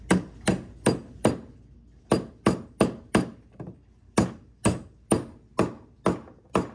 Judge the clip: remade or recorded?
recorded